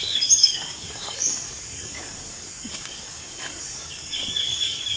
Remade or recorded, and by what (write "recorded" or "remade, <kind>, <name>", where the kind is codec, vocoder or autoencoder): remade, codec, DAC